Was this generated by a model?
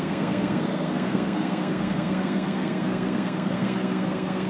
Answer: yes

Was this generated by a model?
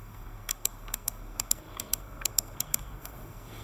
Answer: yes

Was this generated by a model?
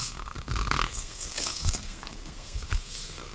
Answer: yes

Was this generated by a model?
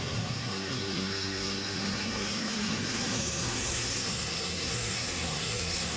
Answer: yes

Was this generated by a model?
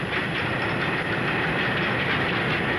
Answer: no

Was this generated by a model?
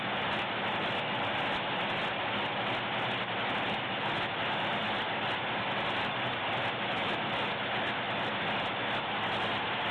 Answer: no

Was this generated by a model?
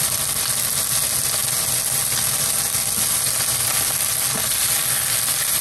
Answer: no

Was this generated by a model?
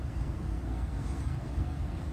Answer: yes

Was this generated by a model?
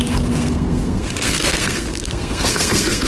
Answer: yes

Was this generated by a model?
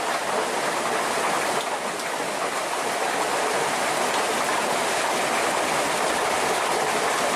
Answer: no